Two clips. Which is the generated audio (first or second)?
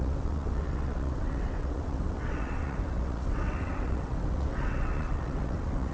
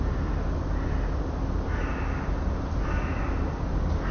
first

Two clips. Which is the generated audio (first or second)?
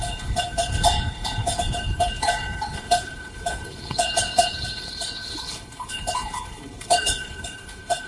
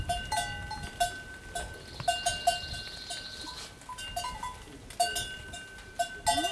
first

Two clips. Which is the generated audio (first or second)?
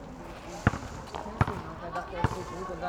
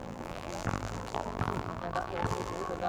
second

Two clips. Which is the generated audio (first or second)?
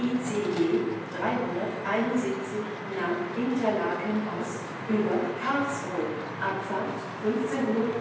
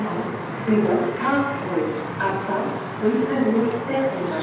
second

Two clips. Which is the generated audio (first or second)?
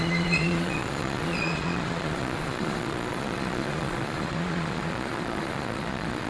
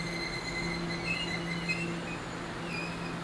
first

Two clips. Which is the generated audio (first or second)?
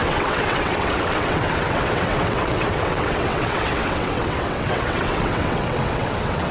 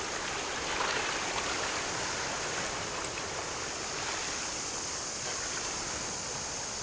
first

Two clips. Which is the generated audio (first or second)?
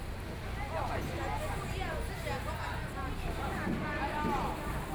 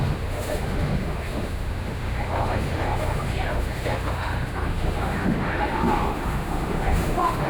second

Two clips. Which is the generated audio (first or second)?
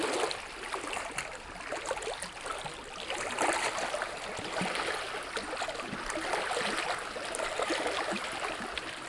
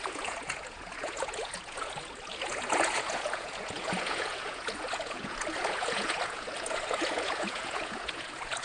second